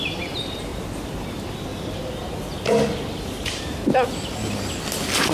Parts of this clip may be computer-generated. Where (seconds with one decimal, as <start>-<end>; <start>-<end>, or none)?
none